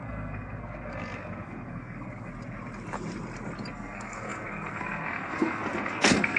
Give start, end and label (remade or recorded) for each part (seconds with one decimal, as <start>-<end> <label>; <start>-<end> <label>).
0.0-2.3 remade; 2.3-3.7 recorded; 3.7-6.4 remade